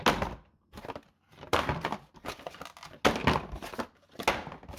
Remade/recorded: recorded